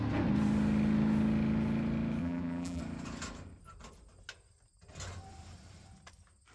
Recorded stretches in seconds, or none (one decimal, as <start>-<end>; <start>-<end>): 0.0-2.2; 2.8-6.5